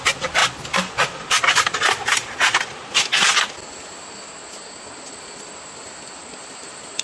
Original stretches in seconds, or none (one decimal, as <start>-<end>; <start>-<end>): 0.0-7.0